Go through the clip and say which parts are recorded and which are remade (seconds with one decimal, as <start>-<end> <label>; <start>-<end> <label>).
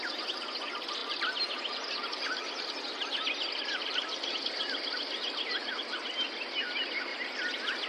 0.0-7.9 recorded